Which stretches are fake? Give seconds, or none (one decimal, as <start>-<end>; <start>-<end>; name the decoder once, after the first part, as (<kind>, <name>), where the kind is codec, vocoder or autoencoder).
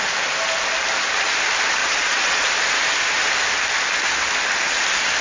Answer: 1.8-2.5 (vocoder, Vocos)